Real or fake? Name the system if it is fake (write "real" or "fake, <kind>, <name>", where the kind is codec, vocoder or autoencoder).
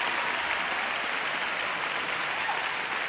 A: real